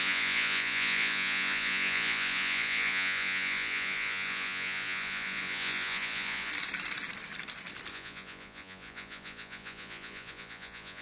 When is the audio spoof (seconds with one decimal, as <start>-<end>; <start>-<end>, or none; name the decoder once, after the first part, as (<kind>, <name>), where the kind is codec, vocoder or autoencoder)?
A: 0.0-6.5 (vocoder, Vocos); 7.9-11.0